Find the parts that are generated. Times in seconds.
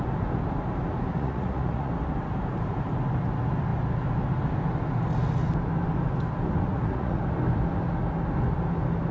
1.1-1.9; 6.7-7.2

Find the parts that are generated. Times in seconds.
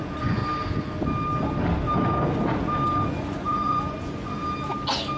0.0-0.4; 3.1-4.4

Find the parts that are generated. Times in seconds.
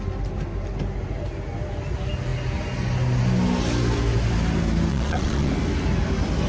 4.9-5.5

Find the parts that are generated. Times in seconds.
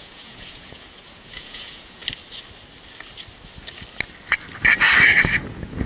0.0-2.0; 5.5-5.9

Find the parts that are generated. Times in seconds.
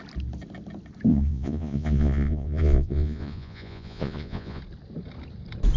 1.1-4.6